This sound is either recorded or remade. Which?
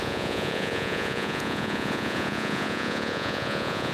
remade